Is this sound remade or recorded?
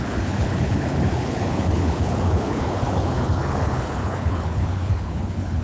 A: remade